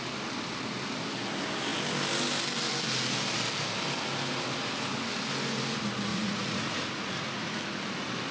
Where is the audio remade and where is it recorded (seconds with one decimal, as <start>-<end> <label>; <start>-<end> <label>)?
0.0-6.1 recorded; 6.1-7.6 remade; 7.6-8.3 recorded